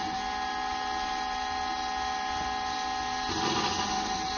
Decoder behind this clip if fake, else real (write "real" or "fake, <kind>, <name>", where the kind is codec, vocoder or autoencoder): real